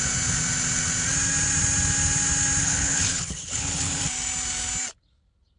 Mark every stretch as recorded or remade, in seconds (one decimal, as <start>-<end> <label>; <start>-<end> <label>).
0.0-2.6 recorded; 2.6-4.0 remade; 4.0-5.6 recorded